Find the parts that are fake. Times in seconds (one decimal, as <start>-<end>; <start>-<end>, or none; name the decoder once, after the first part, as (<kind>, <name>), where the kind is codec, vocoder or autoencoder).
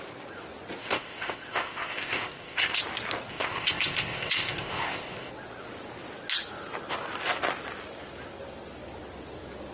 0.8-2.8 (codec, ZipCodec); 3.3-5.3